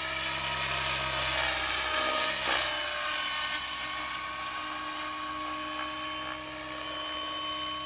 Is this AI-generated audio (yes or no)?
no